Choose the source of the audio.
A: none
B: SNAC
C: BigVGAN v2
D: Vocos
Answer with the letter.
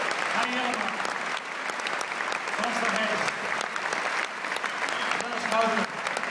A